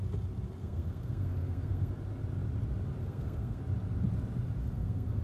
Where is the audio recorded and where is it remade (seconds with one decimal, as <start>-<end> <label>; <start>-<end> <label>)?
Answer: 0.0-0.6 recorded; 0.6-1.9 remade; 1.9-3.0 recorded; 3.0-3.6 remade; 3.6-4.6 recorded; 4.6-5.2 remade